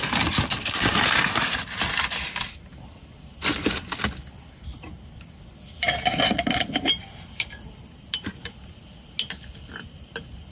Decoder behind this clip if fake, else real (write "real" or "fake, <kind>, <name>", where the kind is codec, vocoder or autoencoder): real